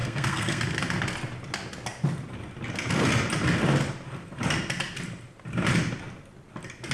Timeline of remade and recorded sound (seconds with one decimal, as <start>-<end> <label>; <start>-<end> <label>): 0.0-0.6 remade; 0.6-6.9 recorded